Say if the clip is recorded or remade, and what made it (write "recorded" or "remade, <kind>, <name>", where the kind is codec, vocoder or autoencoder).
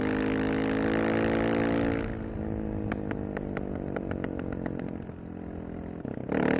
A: recorded